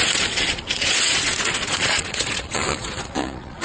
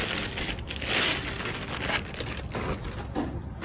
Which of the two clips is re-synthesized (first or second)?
first